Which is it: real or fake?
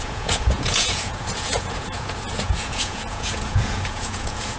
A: fake